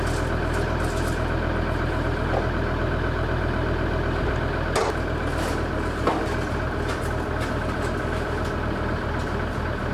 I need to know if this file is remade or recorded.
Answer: recorded